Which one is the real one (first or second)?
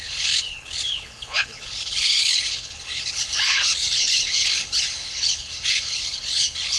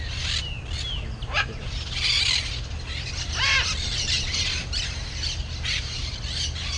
second